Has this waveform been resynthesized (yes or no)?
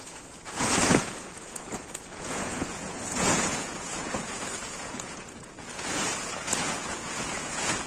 yes